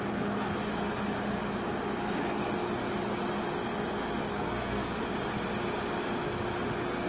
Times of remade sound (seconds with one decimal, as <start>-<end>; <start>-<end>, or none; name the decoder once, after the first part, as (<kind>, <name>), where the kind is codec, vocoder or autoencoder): 4.3-5.0 (codec, SNAC)